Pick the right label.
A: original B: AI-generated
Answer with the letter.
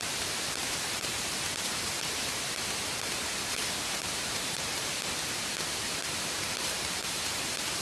B